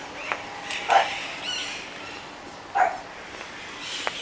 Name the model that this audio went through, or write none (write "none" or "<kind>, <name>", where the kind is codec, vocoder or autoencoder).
none